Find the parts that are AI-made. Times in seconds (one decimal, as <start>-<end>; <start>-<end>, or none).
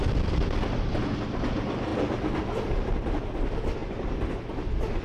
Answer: 1.9-2.9; 3.8-4.3